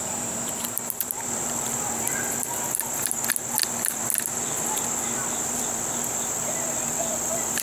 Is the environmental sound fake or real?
fake